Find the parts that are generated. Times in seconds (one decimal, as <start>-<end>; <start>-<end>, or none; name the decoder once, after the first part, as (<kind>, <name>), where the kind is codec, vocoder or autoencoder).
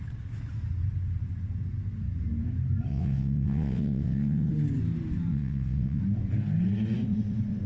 2.9-4.5 (vocoder, WaveNeXt); 5.3-6.0